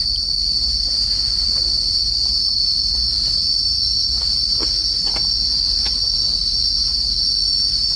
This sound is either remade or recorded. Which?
recorded